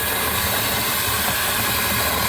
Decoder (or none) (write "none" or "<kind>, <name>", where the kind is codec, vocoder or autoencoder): none